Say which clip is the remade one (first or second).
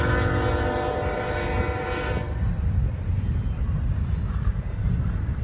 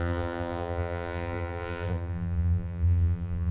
second